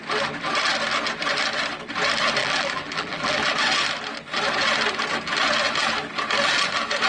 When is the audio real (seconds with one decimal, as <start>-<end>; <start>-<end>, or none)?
0.0-2.4; 3.4-7.1